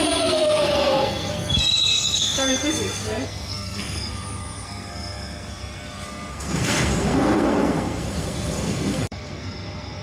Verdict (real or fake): fake